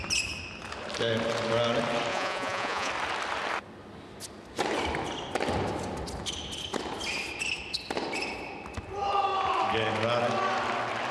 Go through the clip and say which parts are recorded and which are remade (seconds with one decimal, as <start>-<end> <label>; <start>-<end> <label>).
0.0-2.1 recorded; 2.1-2.9 remade; 2.9-11.1 recorded